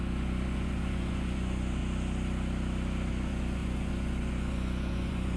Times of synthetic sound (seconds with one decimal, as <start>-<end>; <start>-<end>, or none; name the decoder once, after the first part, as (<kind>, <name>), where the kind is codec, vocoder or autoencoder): 0.0-1.8 (vocoder, Vocos); 3.1-5.4